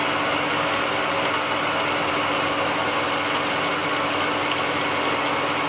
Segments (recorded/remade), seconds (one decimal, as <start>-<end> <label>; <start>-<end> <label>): 0.0-5.7 recorded